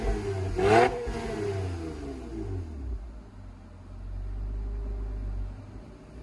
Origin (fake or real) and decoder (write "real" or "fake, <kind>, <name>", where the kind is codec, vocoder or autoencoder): real